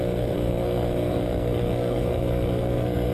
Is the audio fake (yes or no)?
yes